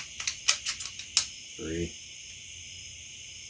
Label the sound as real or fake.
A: real